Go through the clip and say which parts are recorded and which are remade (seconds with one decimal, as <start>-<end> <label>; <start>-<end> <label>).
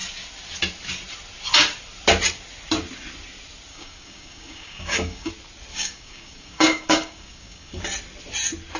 0.0-3.7 recorded; 3.7-5.3 remade; 5.3-5.7 recorded; 5.7-7.8 remade; 7.8-8.8 recorded